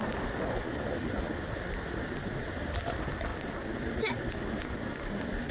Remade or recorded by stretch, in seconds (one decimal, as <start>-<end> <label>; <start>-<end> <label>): 0.0-5.5 recorded